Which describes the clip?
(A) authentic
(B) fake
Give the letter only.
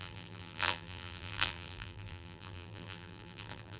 B